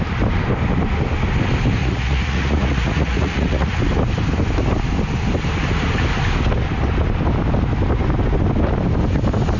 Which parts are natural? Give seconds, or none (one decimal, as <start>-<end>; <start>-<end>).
0.0-1.8; 3.8-9.6